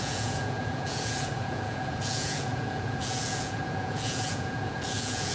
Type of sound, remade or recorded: remade